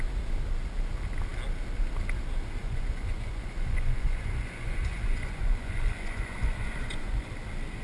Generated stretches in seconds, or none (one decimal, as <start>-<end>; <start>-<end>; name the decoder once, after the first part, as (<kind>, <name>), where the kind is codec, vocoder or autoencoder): 2.6-7.3 (vocoder, Vocos)